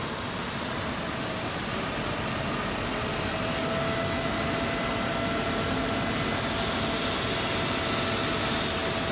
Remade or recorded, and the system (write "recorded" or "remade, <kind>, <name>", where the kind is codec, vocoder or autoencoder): recorded